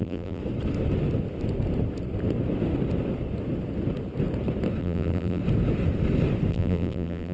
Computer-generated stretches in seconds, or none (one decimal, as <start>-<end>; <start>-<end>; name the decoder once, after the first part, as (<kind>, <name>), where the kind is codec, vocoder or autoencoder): 0.0-0.4 (vocoder, BigVGAN v2); 4.8-5.4; 6.5-7.3